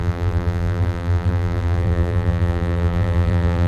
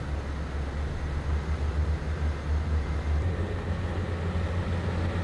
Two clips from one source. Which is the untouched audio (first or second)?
second